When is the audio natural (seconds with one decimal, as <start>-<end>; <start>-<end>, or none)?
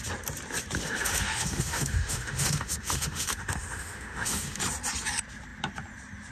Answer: 0.0-0.8; 4.6-6.3